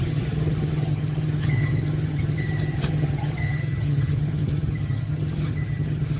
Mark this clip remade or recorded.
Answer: remade